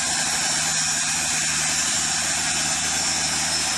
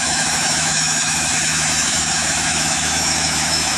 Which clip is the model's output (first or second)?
second